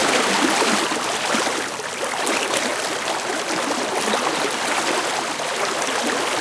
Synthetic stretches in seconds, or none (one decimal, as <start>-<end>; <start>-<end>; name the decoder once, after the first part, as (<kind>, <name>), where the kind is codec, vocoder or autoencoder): none